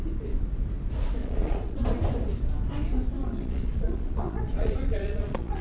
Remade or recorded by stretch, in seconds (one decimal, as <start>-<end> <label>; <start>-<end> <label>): 0.0-1.2 recorded; 1.2-1.8 remade; 1.8-3.2 recorded; 3.2-5.6 remade